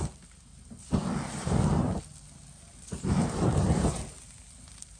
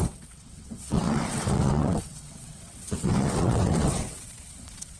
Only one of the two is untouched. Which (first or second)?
first